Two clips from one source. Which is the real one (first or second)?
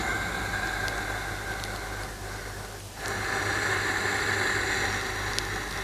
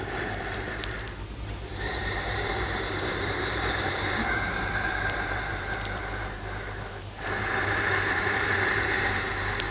first